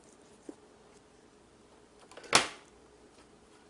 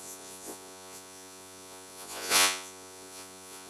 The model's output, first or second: second